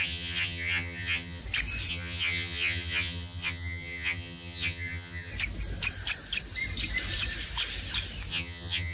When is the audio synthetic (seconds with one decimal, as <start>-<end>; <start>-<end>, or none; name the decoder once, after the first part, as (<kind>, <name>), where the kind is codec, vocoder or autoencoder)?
0.0-1.4 (vocoder, HiFi-GAN); 1.9-5.3; 8.3-8.9